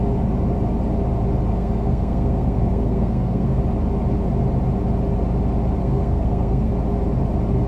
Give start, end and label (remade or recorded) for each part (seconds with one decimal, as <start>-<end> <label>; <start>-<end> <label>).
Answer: 0.0-1.5 recorded; 1.5-3.6 remade; 3.6-5.8 recorded; 5.8-6.7 remade; 6.7-7.7 recorded